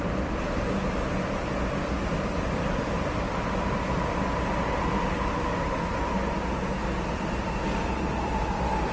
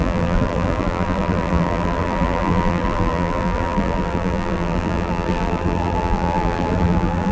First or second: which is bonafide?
first